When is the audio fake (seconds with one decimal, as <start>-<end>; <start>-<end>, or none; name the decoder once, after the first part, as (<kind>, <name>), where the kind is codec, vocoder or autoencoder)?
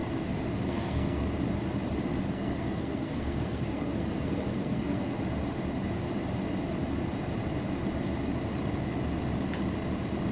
0.7-1.2 (codec, SNAC); 2.3-5.1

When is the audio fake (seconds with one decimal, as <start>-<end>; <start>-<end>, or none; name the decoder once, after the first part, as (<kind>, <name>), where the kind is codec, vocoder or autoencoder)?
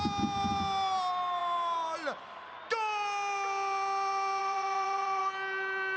4.4-5.2 (vocoder, Vocos)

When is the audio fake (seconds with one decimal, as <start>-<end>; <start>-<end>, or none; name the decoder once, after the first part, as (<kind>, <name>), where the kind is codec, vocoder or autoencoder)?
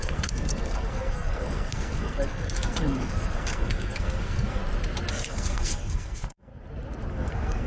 0.0-4.6 (codec, SNAC); 5.1-6.5; 7.1-7.7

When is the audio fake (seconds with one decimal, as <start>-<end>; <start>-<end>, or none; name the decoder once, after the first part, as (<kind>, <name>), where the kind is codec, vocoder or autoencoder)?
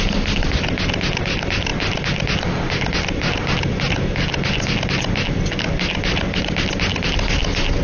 none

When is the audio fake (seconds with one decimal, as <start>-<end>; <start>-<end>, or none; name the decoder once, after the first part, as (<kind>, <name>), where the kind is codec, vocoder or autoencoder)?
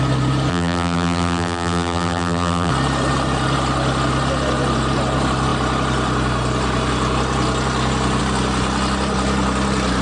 0.5-2.7 (vocoder, BigVGAN v2)